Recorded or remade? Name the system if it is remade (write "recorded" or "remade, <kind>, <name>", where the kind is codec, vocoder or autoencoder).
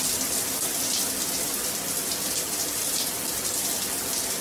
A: recorded